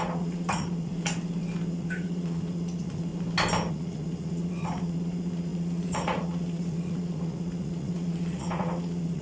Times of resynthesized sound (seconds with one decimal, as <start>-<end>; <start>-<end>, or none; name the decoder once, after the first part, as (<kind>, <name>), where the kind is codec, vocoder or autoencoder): 0.0-0.9 (vocoder, Vocos); 1.7-3.1; 3.7-9.2